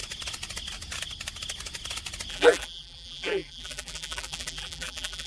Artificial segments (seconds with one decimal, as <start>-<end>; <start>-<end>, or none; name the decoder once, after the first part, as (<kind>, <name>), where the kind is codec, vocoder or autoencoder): 2.3-5.3 (vocoder, BigVGAN v2)